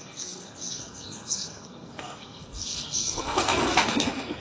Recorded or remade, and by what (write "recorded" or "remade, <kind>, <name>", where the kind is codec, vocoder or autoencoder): remade, codec, SNAC